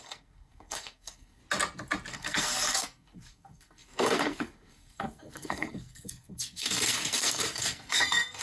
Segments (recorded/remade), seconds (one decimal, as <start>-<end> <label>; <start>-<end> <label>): 0.0-1.4 remade; 1.4-2.1 recorded; 2.1-8.4 remade

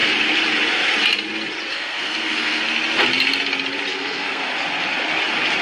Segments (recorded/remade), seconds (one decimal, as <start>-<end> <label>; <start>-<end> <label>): 0.0-1.7 recorded; 1.7-2.6 remade; 2.6-3.9 recorded; 3.9-4.5 remade; 4.5-5.6 recorded

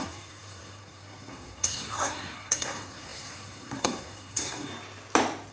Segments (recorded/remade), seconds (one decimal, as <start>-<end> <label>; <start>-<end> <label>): 0.0-4.7 remade; 4.7-5.5 recorded

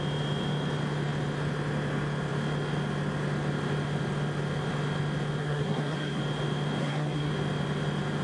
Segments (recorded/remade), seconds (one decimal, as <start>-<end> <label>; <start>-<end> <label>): 0.0-5.4 recorded; 5.4-6.2 remade; 6.2-6.8 recorded; 6.8-7.3 remade; 7.3-8.2 recorded

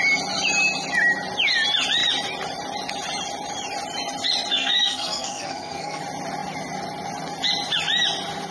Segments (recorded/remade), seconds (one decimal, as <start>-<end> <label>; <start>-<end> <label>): 0.0-4.5 recorded; 4.5-6.0 remade; 6.0-8.5 recorded

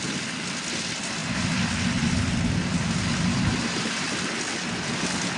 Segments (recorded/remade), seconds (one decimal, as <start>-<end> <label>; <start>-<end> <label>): 0.0-5.4 recorded